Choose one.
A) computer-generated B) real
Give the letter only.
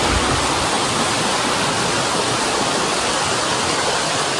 B